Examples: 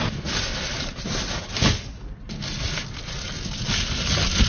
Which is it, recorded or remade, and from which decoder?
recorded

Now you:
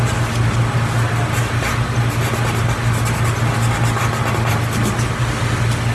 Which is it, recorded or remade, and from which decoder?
recorded